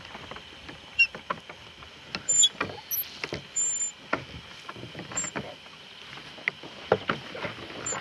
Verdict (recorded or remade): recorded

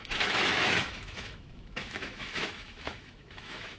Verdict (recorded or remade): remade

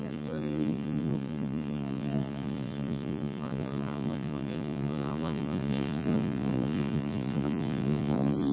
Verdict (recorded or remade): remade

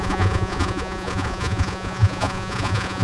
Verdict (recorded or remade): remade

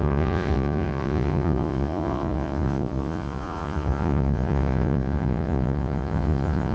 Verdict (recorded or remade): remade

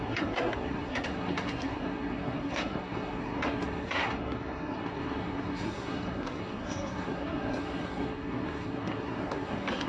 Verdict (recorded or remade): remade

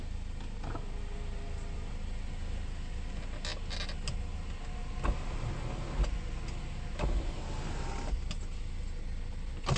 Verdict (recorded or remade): recorded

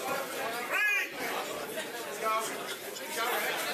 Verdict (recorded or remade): recorded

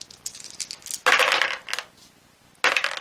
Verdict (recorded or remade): recorded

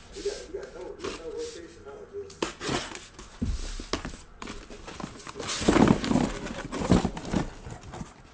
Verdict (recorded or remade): recorded